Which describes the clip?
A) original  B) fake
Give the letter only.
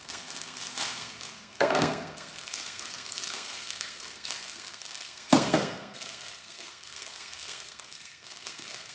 B